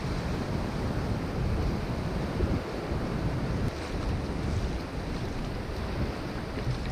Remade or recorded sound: recorded